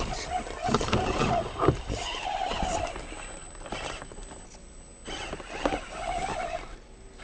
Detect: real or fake real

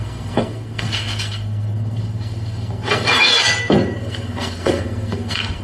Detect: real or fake fake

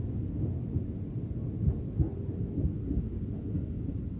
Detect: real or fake real